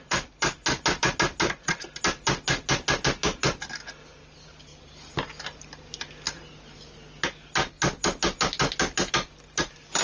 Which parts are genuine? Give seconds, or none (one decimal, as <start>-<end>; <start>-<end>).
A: 0.0-10.0